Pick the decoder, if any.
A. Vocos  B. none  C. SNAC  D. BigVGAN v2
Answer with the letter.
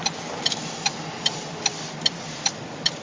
B